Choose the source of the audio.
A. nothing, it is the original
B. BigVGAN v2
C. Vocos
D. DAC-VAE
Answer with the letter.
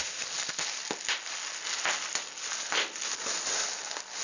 A